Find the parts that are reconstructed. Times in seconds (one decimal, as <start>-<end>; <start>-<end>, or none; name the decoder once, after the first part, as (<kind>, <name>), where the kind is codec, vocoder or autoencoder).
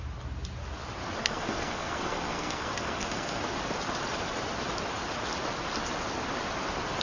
1.2-3.4 (codec, SNAC)